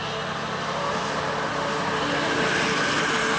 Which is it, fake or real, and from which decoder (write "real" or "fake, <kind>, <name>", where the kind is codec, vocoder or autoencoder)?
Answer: real